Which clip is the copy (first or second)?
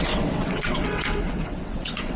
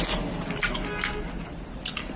first